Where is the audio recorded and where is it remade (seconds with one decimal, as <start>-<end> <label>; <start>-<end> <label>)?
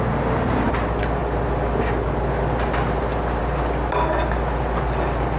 0.0-5.4 recorded